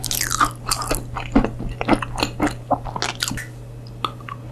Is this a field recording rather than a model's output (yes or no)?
yes